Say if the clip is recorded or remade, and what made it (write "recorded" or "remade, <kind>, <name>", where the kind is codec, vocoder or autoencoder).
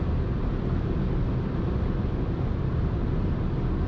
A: remade, vocoder, BigVGAN v2